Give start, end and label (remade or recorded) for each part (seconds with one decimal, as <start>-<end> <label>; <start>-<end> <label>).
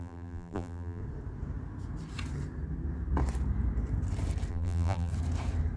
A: 0.0-1.0 remade; 1.0-4.5 recorded; 4.5-5.1 remade; 5.1-5.8 recorded